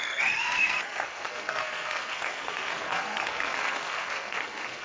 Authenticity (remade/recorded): remade